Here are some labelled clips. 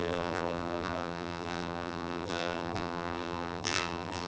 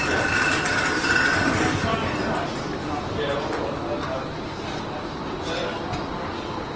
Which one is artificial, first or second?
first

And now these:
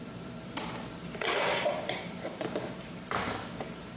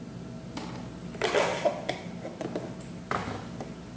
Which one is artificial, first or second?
first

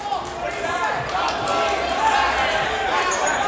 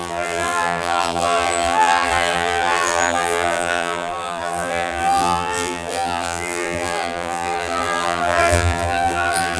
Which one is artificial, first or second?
second